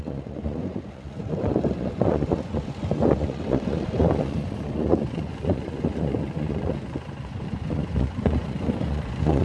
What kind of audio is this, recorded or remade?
remade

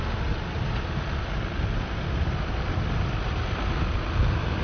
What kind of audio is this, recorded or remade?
recorded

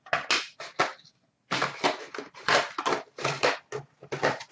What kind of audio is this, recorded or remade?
recorded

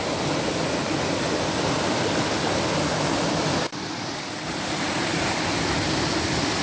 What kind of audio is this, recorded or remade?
recorded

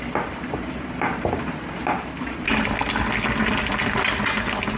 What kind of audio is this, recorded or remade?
recorded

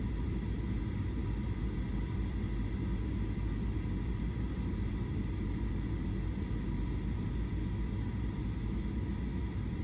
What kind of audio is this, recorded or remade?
recorded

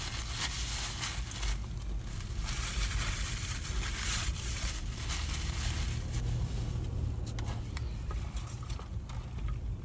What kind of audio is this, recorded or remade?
recorded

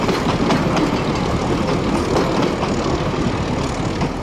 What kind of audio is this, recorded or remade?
recorded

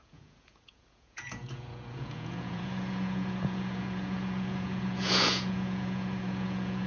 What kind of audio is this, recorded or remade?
remade